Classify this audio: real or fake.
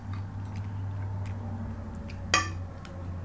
real